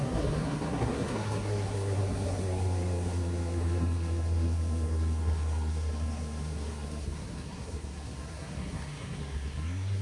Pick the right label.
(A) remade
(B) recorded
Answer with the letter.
A